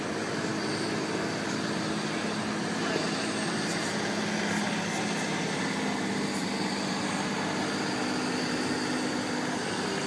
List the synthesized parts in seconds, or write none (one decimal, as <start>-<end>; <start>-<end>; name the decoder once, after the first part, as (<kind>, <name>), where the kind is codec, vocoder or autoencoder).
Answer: none